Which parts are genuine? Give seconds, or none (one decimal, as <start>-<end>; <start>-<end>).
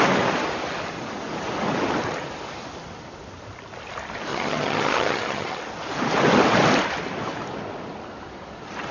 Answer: 0.0-4.3; 5.6-8.9